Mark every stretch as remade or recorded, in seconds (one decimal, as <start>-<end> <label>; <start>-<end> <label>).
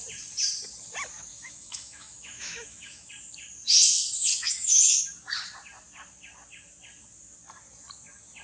0.0-1.3 recorded; 1.3-3.1 remade; 3.1-4.3 recorded; 4.3-5.0 remade; 5.0-8.4 recorded